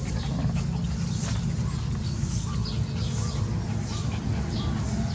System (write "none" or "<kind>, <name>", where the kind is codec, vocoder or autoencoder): none